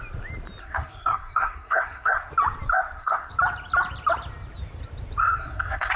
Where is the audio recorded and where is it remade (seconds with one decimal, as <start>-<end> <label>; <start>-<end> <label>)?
0.0-0.6 recorded; 0.6-2.3 remade; 2.3-2.7 recorded; 2.7-3.3 remade; 3.3-5.2 recorded; 5.2-6.0 remade